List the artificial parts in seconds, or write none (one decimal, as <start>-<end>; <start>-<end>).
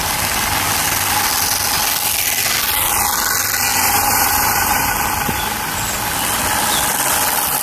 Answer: 3.7-4.9